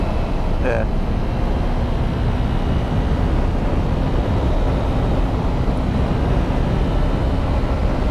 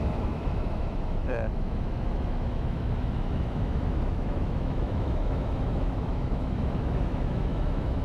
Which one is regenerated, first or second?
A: second